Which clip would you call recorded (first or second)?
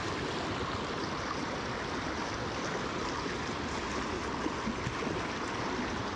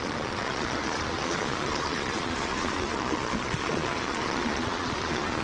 first